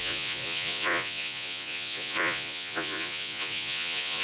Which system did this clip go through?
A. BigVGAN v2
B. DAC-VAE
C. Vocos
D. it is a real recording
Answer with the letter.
C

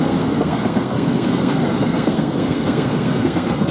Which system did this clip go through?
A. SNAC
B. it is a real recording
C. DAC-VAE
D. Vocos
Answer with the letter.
A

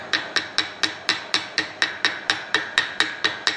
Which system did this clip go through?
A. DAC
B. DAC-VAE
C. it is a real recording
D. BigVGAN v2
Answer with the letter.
C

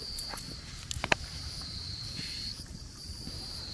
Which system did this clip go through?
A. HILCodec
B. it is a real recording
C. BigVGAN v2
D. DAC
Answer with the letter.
C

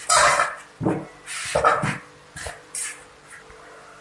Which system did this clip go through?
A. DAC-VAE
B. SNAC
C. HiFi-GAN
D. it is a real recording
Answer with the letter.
D